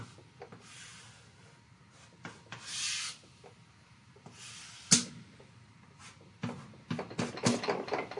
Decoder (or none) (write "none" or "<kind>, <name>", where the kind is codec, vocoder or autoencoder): none